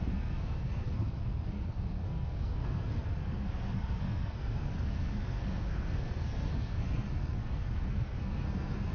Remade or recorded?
remade